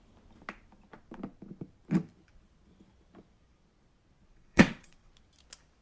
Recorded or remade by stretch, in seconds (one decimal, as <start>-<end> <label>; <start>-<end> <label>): 0.0-4.3 recorded; 4.3-5.1 remade; 5.1-5.8 recorded